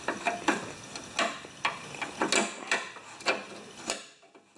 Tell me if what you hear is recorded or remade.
recorded